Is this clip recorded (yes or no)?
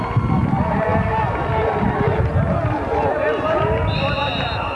yes